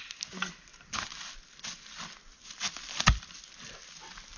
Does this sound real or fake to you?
real